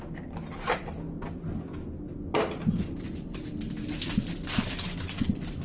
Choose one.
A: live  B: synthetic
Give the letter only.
A